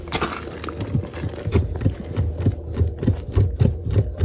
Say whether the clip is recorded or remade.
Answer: recorded